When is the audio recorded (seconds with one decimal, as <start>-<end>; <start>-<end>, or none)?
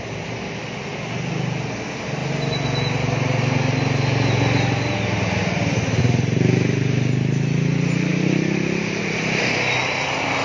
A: 0.0-10.4